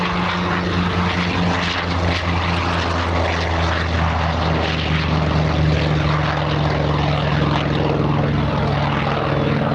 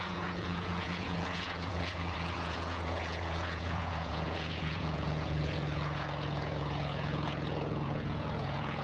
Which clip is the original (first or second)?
first